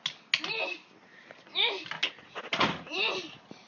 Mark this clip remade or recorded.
recorded